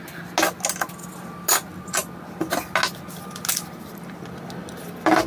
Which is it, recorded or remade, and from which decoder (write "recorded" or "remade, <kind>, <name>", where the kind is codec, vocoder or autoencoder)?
recorded